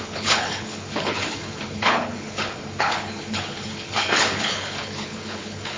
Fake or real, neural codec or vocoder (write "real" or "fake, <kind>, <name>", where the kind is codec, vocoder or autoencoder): fake, codec, HILCodec